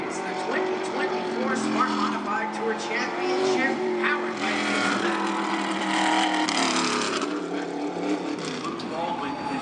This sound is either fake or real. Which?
real